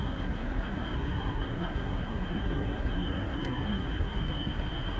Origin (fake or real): fake